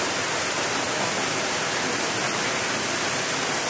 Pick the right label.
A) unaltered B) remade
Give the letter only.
B